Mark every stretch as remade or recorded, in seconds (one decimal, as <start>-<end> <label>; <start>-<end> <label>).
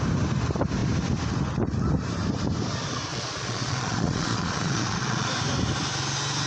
0.0-3.1 recorded; 3.1-5.3 remade; 5.3-6.5 recorded